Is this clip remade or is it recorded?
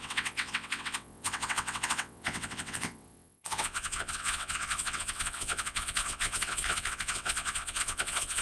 remade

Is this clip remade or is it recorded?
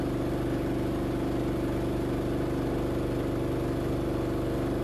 recorded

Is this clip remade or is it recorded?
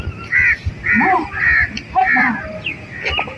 recorded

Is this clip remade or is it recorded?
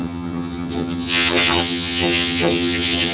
remade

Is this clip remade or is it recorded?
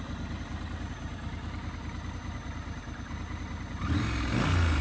recorded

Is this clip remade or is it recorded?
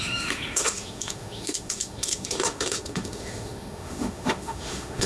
remade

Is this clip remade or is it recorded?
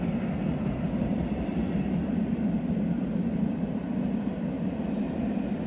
remade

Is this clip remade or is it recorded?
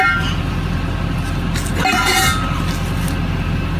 recorded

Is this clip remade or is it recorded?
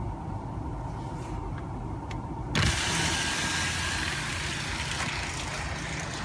recorded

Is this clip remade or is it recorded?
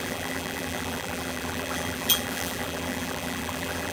remade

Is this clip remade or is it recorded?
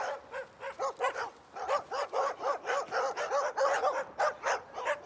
recorded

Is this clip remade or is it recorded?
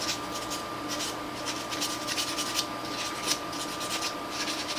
recorded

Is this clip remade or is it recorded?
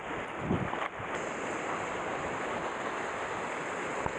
recorded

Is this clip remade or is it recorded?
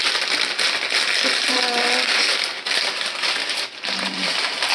recorded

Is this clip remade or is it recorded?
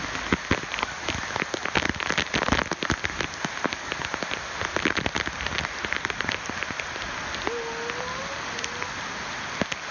recorded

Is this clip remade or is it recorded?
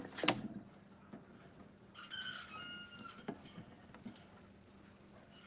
recorded